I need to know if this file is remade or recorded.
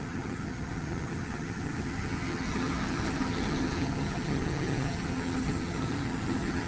remade